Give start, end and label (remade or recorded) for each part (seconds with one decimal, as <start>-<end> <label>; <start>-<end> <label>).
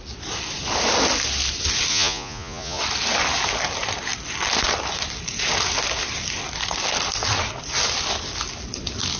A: 0.0-1.9 recorded; 1.9-2.8 remade; 2.8-9.2 recorded